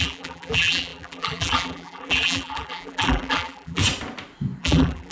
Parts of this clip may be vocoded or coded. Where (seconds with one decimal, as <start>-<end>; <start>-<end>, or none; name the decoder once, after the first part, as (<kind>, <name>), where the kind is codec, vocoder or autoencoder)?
0.0-3.8 (vocoder, BigVGAN v2); 4.6-5.1

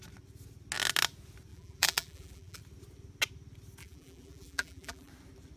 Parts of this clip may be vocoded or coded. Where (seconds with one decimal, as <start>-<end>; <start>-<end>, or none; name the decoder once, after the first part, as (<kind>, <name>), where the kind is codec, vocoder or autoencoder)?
1.5-2.6 (vocoder, BigVGAN v2); 3.8-5.1

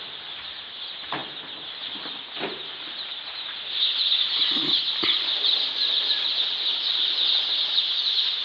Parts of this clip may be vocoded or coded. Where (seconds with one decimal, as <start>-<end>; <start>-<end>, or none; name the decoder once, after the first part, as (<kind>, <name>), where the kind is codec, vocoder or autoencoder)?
none

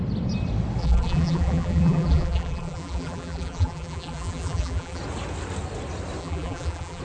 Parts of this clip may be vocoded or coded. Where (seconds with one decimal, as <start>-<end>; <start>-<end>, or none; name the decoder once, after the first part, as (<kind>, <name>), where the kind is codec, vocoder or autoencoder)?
0.8-5.0 (vocoder, BigVGAN v2); 6.2-7.0

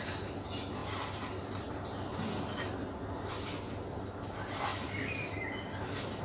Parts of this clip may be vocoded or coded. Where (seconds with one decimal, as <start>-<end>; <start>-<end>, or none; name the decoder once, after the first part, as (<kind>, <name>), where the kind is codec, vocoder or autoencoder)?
4.7-5.4 (vocoder, BigVGAN v2)

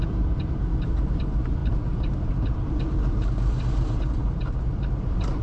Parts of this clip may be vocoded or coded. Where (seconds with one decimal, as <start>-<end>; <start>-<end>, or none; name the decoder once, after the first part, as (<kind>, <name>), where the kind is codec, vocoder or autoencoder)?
0.0-5.4 (vocoder, BigVGAN v2)

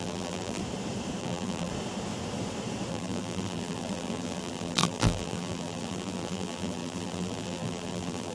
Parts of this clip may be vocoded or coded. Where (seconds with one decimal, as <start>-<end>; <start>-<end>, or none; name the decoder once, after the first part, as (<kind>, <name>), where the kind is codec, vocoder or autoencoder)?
0.0-0.6 (vocoder, BigVGAN v2); 1.2-1.7; 2.9-8.3

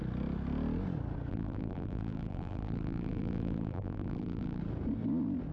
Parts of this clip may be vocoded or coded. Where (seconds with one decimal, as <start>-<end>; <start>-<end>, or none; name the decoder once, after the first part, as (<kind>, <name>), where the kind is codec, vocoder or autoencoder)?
1.3-4.6 (vocoder, BigVGAN v2)